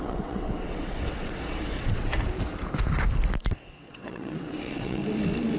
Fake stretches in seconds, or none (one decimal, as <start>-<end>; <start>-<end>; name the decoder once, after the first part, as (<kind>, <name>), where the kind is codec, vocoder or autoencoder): 0.0-2.1 (vocoder, WaveNeXt); 3.6-5.0